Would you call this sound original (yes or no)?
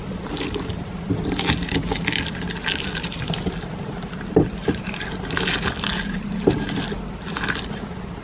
yes